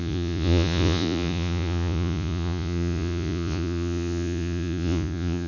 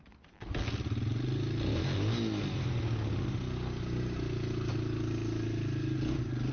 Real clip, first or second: second